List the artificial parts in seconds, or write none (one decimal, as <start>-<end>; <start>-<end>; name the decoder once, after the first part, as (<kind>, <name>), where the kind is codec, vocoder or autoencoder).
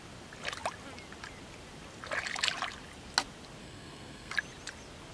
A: 3.6-4.3 (codec, SNAC)